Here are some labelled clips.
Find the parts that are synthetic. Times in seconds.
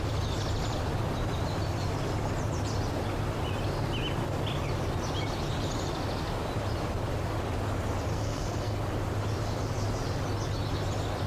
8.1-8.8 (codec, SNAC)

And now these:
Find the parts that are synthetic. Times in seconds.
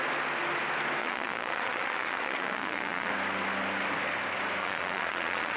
1.0-3.1 (vocoder, Vocos); 4.6-5.6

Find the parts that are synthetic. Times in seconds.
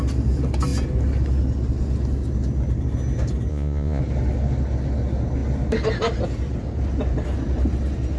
3.5-4.0 (vocoder, Vocos)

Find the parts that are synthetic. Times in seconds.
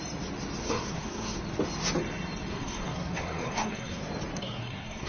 0.6-1.4 (codec, SNAC); 2.5-4.0; 4.4-5.1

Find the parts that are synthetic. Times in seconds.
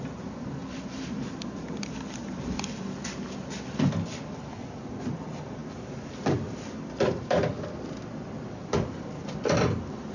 0.0-0.6 (vocoder, BigVGAN v2); 4.3-10.1